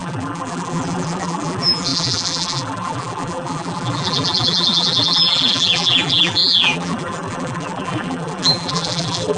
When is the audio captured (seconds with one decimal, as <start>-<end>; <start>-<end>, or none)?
none